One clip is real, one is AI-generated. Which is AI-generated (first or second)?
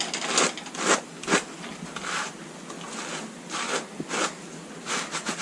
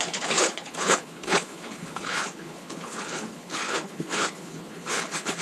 second